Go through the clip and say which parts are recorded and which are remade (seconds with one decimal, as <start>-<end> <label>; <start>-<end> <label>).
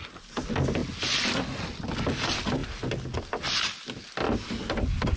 0.0-5.2 recorded